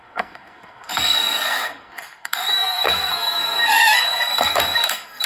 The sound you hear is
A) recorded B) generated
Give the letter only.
B